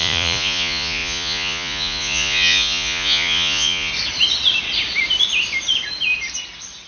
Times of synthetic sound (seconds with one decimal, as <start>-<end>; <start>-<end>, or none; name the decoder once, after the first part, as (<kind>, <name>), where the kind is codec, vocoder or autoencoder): 0.0-3.9 (vocoder, Vocos)